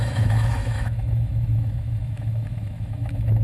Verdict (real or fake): fake